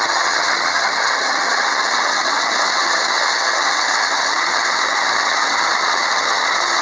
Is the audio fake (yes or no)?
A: yes